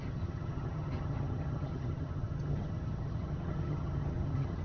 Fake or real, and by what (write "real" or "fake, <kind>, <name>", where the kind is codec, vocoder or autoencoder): fake, vocoder, HiFi-GAN